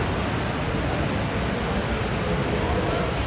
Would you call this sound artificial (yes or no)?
no